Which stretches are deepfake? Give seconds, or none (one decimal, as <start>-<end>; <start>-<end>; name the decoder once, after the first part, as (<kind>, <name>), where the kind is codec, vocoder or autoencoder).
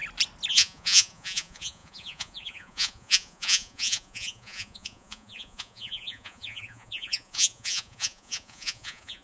0.5-9.2 (vocoder, Vocos)